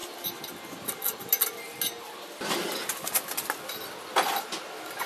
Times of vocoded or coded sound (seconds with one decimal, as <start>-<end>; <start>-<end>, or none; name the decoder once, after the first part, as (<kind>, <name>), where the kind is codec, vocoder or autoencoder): none